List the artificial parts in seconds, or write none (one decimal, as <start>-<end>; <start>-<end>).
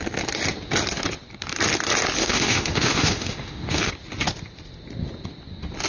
2.2-3.9